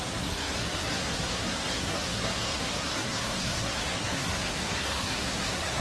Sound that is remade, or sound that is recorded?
remade